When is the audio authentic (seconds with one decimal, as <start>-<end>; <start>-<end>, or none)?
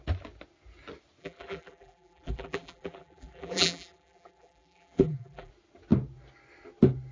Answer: 0.0-1.2; 5.5-7.1